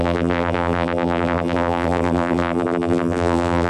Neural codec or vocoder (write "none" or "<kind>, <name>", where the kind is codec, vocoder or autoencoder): vocoder, BigVGAN v2